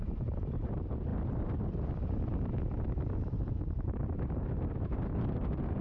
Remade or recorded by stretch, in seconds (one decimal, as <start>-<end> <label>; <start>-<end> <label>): 0.0-5.8 recorded